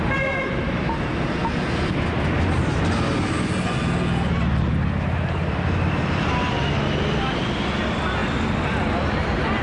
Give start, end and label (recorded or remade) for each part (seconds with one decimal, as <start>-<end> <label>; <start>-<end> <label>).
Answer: 0.0-9.6 recorded